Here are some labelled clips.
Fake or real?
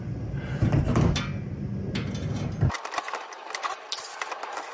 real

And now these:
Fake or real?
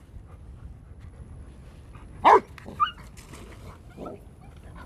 real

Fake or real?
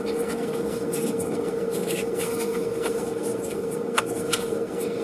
fake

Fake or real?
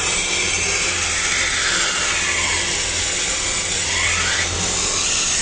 real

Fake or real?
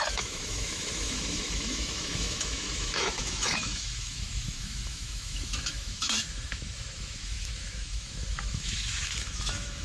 fake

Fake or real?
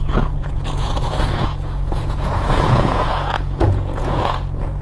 fake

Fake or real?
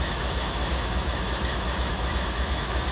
fake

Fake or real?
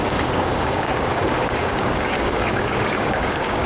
fake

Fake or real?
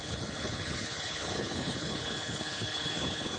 fake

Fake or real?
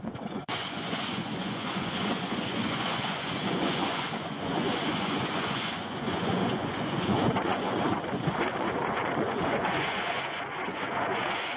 fake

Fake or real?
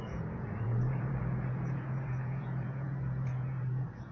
fake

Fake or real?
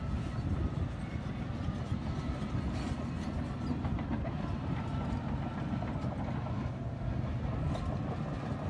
real